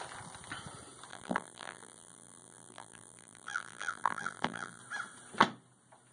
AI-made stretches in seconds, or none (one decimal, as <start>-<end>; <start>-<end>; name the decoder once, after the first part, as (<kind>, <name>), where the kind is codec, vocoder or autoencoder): 1.1-4.8 (vocoder, BigVGAN v2)